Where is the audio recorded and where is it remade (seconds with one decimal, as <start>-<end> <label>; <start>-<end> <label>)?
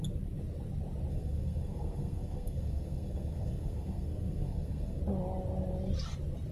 0.0-1.1 recorded; 1.1-5.0 remade; 5.0-6.5 recorded